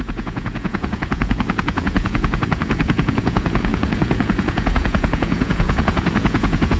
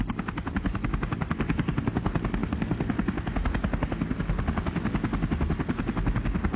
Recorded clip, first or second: second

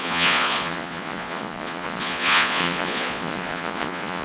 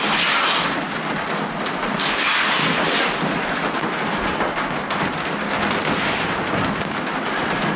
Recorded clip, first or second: second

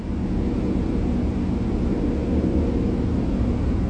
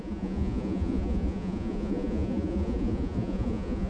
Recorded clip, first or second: first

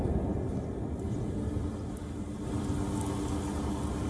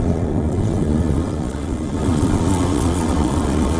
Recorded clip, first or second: first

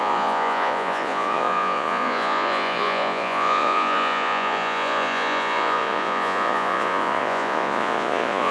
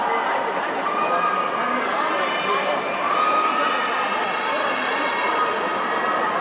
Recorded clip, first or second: second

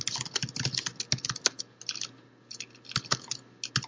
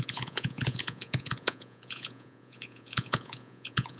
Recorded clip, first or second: first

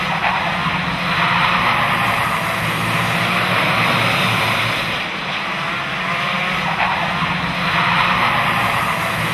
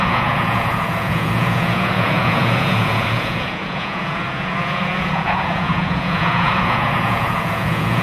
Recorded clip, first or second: first